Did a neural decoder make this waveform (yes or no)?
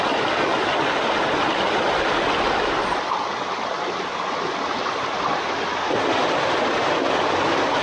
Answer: no